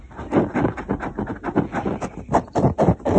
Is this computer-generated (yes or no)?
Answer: no